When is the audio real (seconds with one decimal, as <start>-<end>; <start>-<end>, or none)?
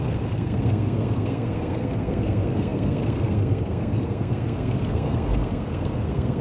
none